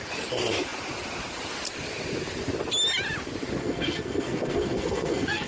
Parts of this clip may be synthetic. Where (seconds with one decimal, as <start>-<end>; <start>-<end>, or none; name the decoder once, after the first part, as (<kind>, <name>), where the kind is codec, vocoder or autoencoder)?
3.6-5.5 (codec, SNAC)